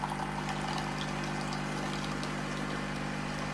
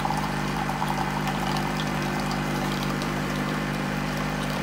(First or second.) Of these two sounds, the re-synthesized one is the second